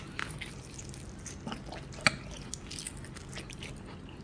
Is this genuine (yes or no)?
yes